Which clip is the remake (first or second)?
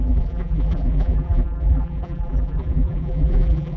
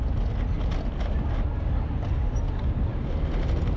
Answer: first